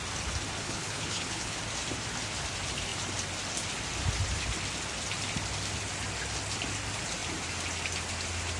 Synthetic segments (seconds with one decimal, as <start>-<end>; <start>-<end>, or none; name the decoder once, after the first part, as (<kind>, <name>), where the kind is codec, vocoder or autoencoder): 0.6-1.6 (codec, HILCodec)